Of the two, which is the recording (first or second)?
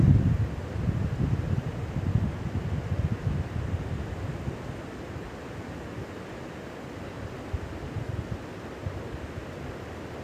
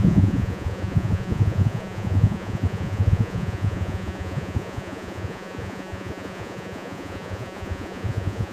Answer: first